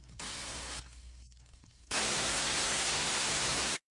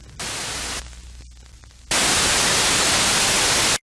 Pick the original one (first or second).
second